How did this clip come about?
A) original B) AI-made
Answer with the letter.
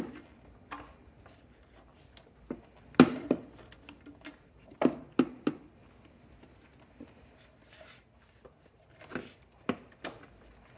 A